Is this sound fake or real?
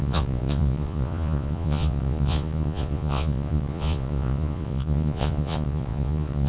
fake